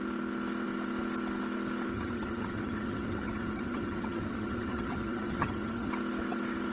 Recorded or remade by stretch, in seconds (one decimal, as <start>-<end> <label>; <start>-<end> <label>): 0.0-1.9 recorded; 1.9-5.9 remade; 5.9-6.7 recorded

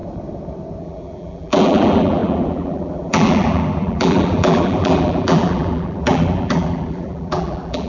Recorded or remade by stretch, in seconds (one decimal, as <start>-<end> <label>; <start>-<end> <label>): 0.0-0.8 recorded; 0.8-7.9 remade